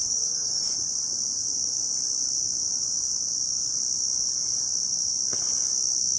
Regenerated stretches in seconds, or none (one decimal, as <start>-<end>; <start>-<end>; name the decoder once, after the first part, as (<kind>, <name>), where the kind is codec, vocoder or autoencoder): 0.0-0.9 (codec, DAC)